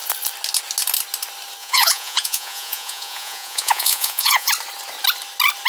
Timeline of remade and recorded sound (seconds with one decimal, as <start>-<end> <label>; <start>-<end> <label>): 0.0-1.6 recorded; 1.6-4.5 remade; 4.5-5.7 recorded